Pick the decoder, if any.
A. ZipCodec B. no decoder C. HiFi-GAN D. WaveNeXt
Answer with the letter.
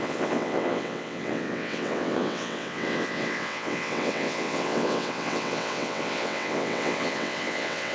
D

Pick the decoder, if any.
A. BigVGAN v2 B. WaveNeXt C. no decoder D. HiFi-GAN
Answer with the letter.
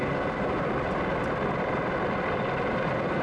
C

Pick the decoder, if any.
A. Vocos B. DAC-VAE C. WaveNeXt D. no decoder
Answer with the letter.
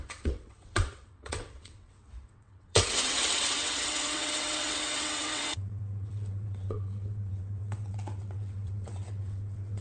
C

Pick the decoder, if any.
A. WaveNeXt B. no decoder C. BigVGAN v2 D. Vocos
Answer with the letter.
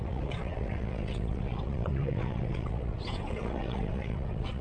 A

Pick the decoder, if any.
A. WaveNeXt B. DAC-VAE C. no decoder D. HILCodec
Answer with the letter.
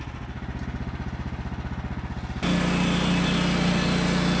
C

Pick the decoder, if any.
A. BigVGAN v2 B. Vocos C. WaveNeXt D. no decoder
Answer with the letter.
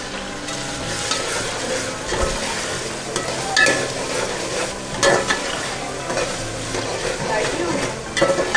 D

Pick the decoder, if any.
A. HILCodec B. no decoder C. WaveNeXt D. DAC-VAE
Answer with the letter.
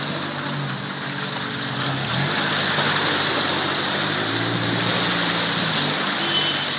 B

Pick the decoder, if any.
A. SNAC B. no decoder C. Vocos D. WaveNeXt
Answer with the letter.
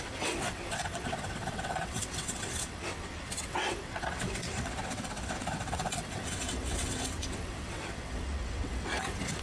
D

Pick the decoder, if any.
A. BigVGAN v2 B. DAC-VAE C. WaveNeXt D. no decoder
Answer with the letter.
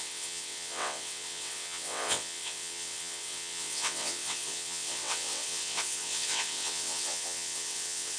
C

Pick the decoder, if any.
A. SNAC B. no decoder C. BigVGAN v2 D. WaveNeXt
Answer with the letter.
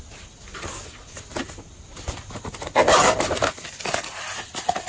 B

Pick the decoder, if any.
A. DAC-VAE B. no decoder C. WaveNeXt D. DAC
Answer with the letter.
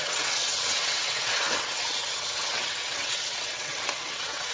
C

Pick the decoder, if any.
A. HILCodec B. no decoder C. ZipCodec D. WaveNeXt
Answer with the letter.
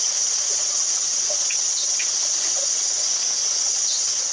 D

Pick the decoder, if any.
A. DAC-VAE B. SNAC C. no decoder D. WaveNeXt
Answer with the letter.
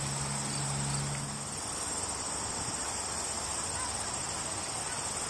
C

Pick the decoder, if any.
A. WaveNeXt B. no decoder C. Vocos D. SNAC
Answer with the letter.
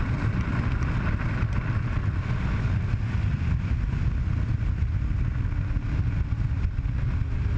B